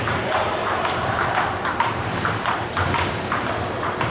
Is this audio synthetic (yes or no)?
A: yes